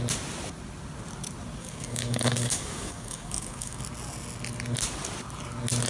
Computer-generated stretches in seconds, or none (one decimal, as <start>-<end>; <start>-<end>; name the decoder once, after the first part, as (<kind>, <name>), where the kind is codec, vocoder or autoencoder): 1.6-3.8 (codec, DAC)